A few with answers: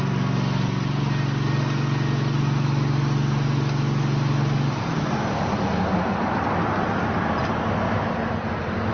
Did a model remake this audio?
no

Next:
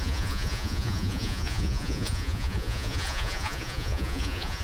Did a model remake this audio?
yes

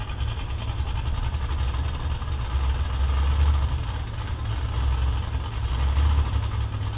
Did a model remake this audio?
no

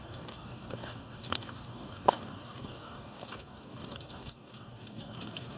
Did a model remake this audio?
yes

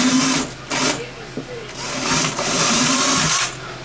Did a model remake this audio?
no